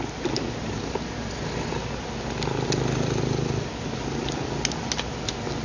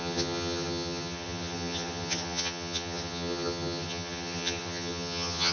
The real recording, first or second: first